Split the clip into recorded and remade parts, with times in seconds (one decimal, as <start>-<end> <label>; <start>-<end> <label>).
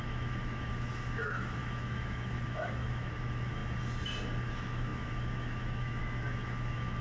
0.0-3.6 remade; 3.6-4.5 recorded; 4.5-7.0 remade